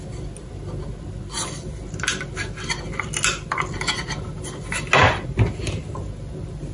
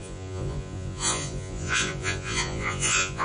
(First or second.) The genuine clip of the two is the first